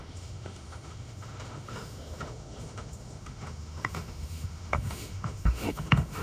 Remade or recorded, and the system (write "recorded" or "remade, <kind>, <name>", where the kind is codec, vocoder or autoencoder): remade, autoencoder, DAC-VAE